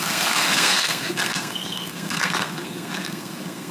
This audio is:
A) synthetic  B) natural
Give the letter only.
A